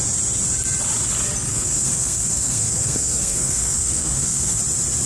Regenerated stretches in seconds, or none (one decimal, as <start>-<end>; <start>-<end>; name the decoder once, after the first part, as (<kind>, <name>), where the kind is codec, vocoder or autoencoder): 1.5-4.6 (codec, SNAC)